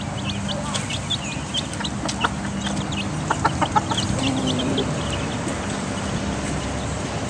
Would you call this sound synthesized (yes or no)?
no